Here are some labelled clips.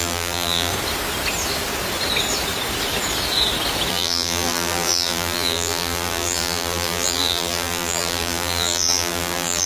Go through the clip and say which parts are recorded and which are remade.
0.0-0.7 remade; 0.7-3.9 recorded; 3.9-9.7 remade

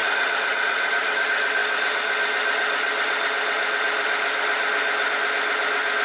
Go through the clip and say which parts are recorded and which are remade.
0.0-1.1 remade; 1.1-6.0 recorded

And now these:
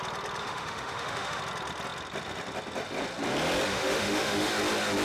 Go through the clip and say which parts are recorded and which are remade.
0.0-0.4 recorded; 0.4-1.4 remade; 1.4-3.7 recorded; 3.7-4.5 remade; 4.5-5.0 recorded